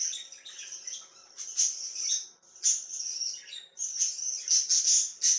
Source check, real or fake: real